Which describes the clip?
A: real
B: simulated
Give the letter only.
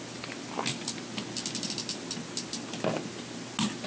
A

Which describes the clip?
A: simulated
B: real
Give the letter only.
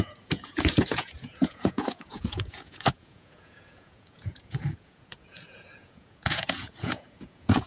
A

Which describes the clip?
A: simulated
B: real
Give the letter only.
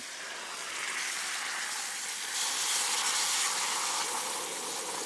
B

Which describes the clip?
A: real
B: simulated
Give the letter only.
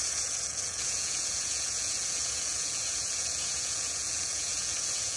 B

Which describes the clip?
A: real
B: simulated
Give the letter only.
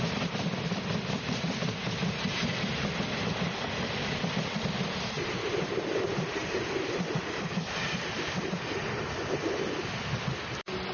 A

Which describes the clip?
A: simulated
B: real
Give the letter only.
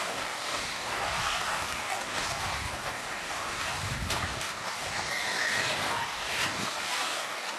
A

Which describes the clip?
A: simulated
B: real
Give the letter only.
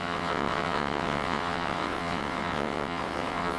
A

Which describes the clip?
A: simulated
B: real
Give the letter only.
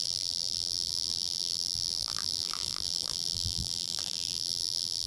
A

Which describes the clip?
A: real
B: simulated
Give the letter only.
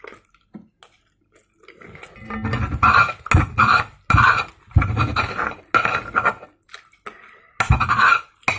A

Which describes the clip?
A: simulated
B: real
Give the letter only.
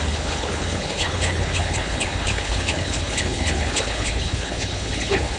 A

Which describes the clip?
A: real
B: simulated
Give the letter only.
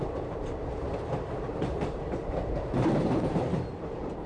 B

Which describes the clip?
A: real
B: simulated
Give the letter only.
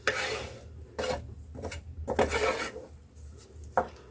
A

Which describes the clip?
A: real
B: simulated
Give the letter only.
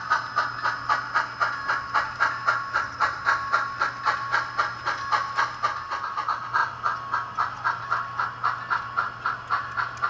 A